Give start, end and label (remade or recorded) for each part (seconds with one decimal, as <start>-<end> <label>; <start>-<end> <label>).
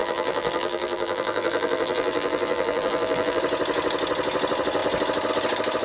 0.0-3.4 remade; 3.4-5.8 recorded